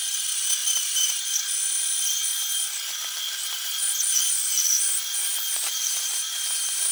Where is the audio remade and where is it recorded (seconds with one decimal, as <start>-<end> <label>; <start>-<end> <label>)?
0.0-5.6 recorded; 5.6-6.9 remade